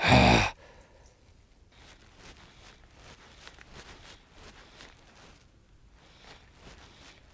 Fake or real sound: real